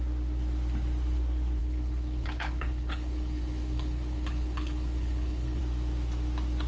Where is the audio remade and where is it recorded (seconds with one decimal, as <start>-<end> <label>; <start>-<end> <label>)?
0.0-1.6 recorded; 1.6-5.6 remade; 5.6-6.7 recorded